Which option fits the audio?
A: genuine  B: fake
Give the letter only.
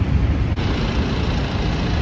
A